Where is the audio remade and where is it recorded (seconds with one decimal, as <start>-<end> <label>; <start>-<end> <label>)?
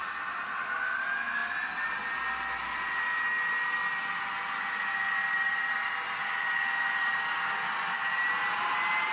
0.0-9.1 recorded